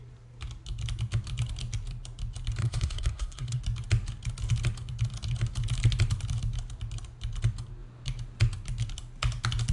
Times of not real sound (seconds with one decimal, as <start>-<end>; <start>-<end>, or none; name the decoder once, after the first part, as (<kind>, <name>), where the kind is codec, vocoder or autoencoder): 2.6-3.6 (codec, SNAC)

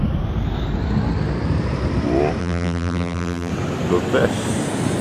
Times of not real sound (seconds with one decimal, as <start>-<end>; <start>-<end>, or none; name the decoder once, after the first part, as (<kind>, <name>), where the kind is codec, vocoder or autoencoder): 2.4-3.5 (vocoder, BigVGAN v2)

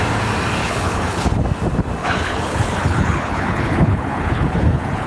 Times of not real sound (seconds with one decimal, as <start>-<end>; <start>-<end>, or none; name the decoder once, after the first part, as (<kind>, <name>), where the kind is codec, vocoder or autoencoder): 0.6-1.4 (codec, HILCodec); 2.0-5.1

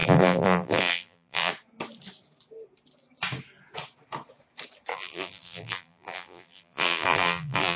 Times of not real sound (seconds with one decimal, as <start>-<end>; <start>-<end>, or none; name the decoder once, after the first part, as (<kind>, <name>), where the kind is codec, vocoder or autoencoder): 0.0-1.5 (vocoder, BigVGAN v2); 4.9-7.8

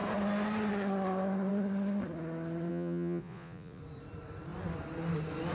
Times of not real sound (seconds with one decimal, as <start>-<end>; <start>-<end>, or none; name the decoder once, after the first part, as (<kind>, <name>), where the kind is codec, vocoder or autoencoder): 2.7-3.8 (vocoder, Vocos)

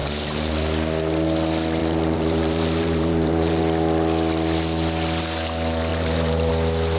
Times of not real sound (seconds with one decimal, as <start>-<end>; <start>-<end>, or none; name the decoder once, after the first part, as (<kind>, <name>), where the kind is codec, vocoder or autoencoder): 0.0-0.5 (vocoder, BigVGAN v2); 1.8-3.6; 5.9-6.5